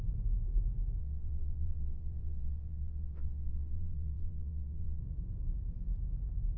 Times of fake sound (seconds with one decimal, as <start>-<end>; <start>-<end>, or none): 1.0-5.0